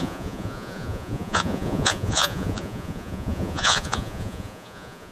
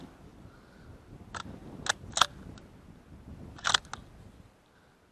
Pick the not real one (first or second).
first